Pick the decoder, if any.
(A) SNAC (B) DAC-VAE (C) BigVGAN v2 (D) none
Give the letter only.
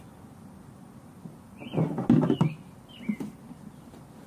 D